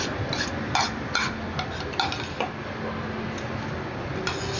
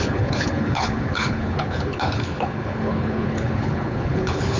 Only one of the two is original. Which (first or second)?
first